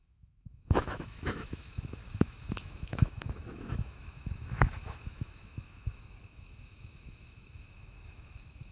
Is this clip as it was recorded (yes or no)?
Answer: no